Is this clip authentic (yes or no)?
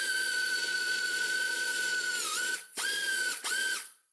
no